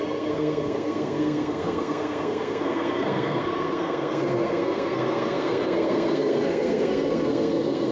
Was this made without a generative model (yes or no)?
no